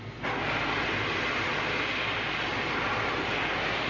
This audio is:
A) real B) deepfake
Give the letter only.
A